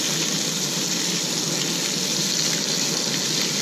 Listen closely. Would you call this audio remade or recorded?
recorded